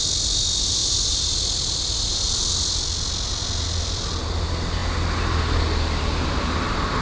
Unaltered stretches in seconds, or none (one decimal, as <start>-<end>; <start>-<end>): 0.0-7.0